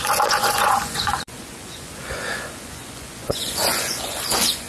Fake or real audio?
fake